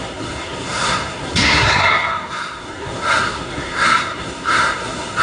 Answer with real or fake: fake